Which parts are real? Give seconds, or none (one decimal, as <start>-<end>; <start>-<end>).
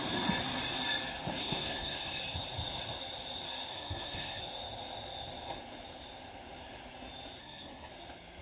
0.0-1.4; 2.2-3.7; 4.4-7.4; 7.9-8.4